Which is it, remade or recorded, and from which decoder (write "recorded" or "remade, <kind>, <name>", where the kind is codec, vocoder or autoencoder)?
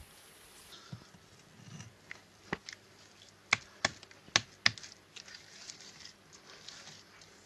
recorded